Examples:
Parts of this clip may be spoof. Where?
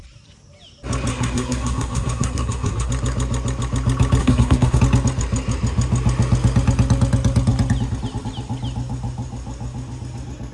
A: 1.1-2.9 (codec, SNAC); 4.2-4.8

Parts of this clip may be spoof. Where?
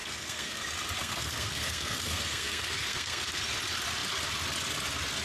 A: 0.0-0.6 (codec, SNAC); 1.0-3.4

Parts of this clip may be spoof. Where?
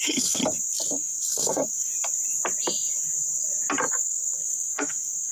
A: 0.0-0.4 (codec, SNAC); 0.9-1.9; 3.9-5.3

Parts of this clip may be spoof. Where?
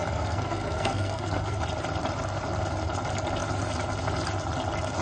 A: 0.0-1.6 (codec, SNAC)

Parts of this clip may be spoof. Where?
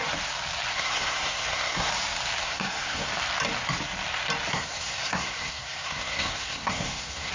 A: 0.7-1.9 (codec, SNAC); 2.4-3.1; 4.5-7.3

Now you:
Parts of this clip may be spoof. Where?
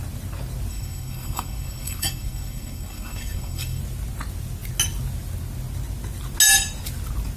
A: 0.7-3.8 (codec, SNAC)